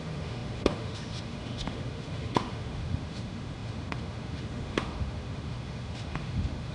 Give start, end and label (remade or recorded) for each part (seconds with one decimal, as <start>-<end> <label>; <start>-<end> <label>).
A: 0.0-6.7 remade